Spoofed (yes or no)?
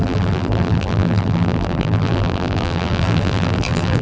yes